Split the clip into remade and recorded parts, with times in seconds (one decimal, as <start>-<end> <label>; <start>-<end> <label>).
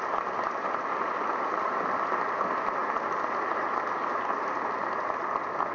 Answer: 0.0-5.7 recorded